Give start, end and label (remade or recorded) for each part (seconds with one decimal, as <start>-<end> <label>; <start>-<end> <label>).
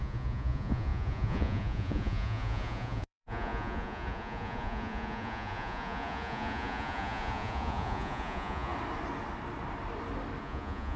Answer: 0.0-8.7 remade; 8.7-10.4 recorded; 10.4-11.0 remade